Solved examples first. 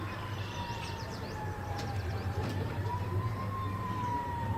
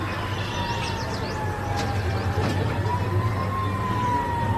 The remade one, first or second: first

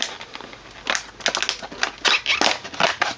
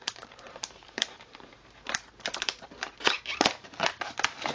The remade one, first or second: second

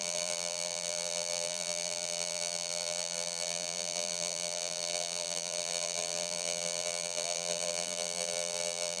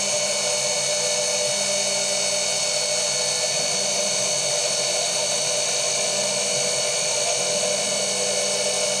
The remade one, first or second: first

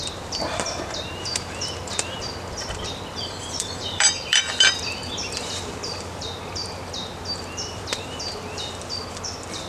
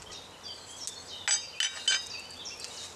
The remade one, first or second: first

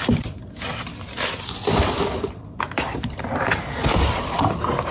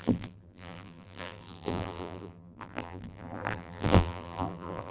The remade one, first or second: second